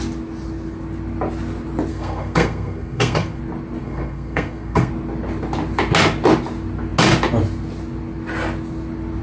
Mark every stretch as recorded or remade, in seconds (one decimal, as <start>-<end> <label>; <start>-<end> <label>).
0.0-1.9 recorded; 1.9-3.4 remade; 3.4-3.8 recorded; 3.8-4.9 remade; 4.9-9.2 recorded